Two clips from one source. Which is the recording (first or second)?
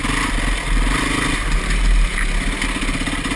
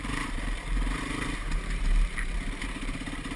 first